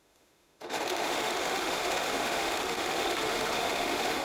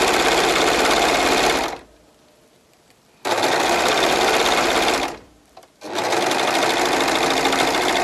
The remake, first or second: first